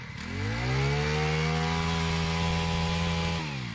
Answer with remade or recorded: recorded